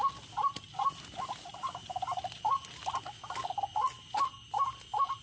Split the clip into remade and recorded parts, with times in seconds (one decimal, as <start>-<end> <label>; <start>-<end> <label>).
0.0-5.2 recorded